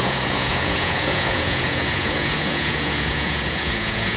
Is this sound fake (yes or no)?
yes